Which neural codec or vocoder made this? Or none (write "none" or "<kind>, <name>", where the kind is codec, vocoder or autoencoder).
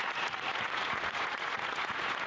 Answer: vocoder, Vocos